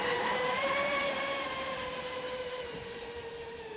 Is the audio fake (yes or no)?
yes